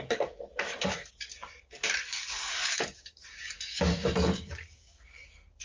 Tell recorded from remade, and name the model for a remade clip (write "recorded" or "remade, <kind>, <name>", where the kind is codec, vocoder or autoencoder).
remade, codec, DAC